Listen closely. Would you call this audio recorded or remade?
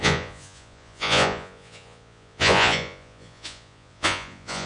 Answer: remade